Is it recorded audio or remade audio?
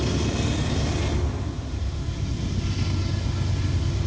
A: recorded